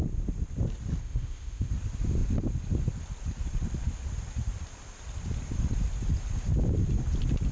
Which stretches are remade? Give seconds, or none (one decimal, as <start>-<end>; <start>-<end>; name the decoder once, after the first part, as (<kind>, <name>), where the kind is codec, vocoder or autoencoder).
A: 1.0-1.7 (codec, ZipCodec)